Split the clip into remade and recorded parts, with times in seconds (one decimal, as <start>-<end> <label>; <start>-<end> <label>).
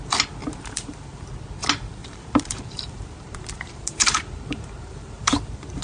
0.0-0.4 recorded; 0.4-1.3 remade; 1.3-2.0 recorded; 2.0-5.8 remade